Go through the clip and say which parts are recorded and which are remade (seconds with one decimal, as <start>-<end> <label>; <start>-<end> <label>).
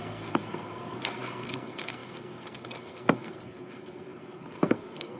0.0-5.2 remade